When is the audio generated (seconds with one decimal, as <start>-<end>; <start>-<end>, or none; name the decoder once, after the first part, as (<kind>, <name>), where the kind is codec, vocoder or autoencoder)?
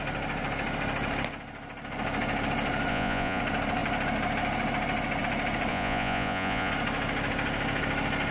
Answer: 2.9-3.4 (vocoder, Vocos); 5.7-6.7